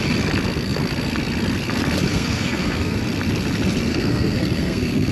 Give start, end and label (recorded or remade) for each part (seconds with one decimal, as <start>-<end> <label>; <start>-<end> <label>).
0.0-2.1 recorded; 2.1-3.0 remade; 3.0-3.9 recorded; 3.9-5.1 remade